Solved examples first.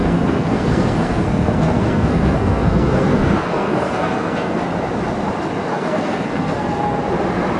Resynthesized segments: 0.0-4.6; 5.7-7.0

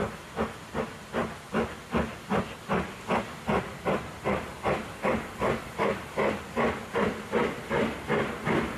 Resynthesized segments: none